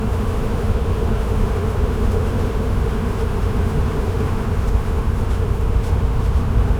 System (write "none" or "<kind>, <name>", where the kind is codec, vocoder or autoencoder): autoencoder, DAC-VAE